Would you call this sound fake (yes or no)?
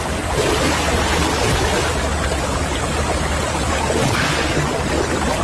no